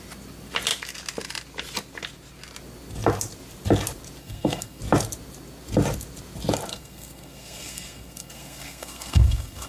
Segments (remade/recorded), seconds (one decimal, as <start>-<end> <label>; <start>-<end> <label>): 0.0-4.2 recorded; 4.2-4.8 remade; 4.8-6.7 recorded; 6.7-9.7 remade